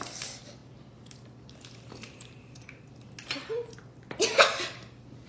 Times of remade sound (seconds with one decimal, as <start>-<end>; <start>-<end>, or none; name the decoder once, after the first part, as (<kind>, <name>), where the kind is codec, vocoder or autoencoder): none